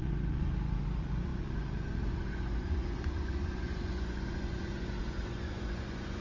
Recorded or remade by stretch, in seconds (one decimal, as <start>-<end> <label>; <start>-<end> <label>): 0.0-6.2 remade

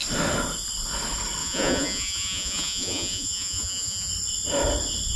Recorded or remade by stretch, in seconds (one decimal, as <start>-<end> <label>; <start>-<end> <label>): 0.0-1.4 recorded; 1.4-4.1 remade; 4.1-5.2 recorded

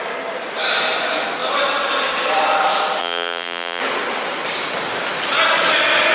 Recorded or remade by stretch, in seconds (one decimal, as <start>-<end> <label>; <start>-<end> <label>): 0.0-3.0 recorded; 3.0-3.8 remade; 3.8-6.1 recorded

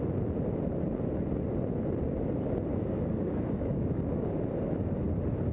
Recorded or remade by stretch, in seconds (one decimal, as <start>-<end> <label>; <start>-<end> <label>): 0.0-2.7 recorded; 2.7-4.3 remade; 4.3-5.5 recorded

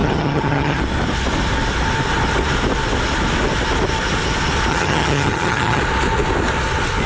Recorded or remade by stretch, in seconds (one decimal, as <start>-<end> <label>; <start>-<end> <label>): 0.0-0.8 remade; 0.8-4.7 recorded; 4.7-5.8 remade; 5.8-7.1 recorded

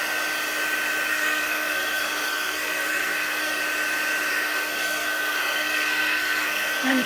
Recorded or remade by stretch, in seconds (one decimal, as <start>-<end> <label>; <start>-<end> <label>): 0.0-1.1 recorded; 1.1-3.6 remade; 3.6-4.3 recorded; 4.3-7.1 remade

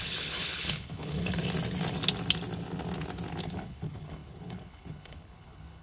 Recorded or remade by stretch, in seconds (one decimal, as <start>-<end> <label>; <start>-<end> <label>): 0.0-1.4 remade; 1.4-3.4 recorded; 3.4-5.8 remade